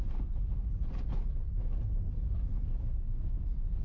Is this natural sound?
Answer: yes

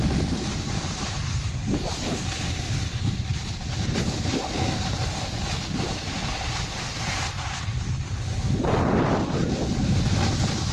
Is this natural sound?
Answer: yes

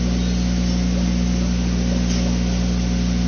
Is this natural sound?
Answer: yes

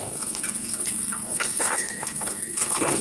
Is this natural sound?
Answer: no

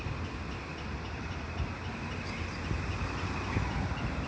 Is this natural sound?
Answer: yes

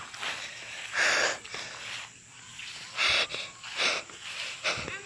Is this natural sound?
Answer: yes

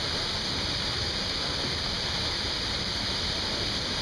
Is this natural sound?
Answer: no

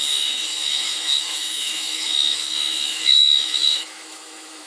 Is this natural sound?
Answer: no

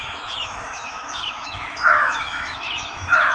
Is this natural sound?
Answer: no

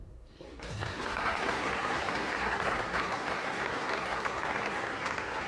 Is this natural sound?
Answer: no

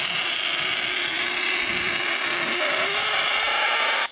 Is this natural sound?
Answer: yes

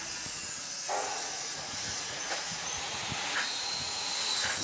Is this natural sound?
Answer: no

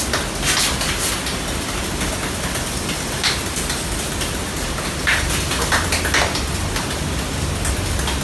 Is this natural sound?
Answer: yes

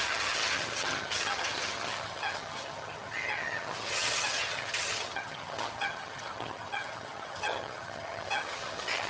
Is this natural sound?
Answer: no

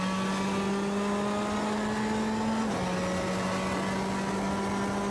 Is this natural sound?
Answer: yes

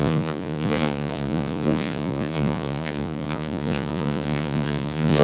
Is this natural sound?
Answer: no